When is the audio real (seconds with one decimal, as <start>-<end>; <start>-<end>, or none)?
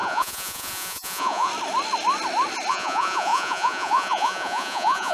1.5-2.7